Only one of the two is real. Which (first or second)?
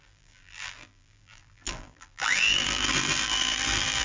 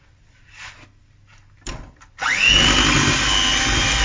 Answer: second